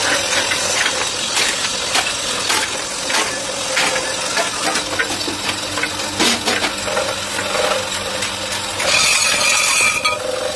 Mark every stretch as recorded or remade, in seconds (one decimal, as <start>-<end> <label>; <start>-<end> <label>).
0.0-10.6 recorded